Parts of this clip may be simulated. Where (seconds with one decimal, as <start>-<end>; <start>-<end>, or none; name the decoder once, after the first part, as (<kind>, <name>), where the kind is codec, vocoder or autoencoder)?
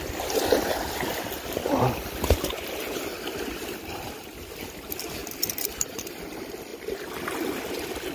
1.1-4.1 (vocoder, BigVGAN v2); 5.2-6.2; 6.7-7.6